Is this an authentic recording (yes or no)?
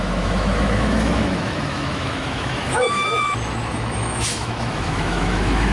no